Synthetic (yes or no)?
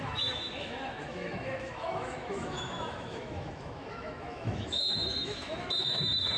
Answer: yes